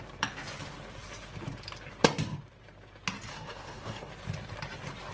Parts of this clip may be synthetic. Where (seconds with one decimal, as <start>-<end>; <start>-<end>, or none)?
3.3-4.1